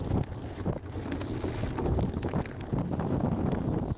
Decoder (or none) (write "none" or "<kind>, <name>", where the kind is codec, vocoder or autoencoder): none